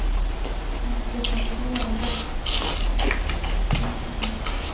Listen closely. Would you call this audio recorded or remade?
recorded